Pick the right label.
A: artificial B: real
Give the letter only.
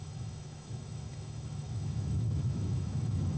A